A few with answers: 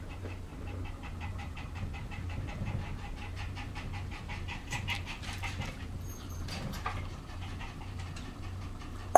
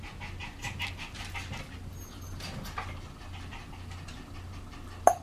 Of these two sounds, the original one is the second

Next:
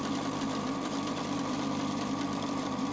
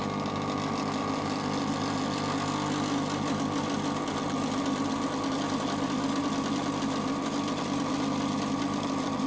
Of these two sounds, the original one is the second